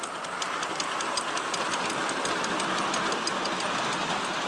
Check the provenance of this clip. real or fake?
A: real